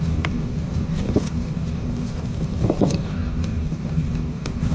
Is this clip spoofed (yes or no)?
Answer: yes